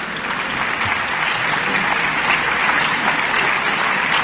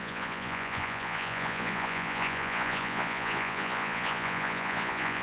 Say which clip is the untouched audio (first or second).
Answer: first